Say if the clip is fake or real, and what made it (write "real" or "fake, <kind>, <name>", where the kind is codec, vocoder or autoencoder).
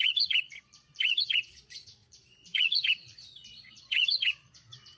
fake, vocoder, Vocos